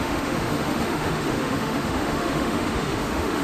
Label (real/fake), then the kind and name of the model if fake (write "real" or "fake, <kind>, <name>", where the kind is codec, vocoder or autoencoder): fake, autoencoder, DAC-VAE